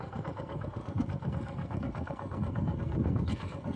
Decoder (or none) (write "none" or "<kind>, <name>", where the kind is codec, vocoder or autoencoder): codec, SNAC